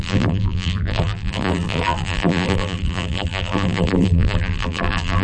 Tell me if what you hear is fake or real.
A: fake